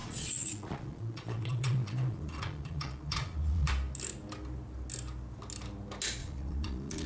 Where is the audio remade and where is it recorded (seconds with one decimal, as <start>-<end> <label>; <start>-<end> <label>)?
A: 0.0-3.7 remade; 3.7-6.2 recorded; 6.2-7.1 remade